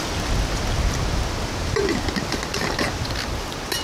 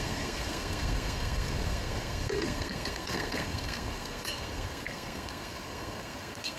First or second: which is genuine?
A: first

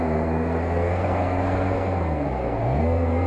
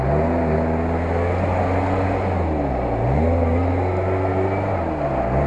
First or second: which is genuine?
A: second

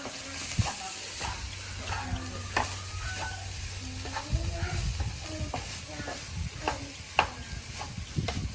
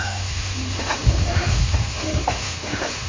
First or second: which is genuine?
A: first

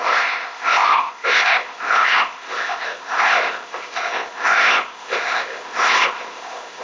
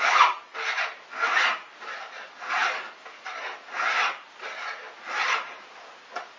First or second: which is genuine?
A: second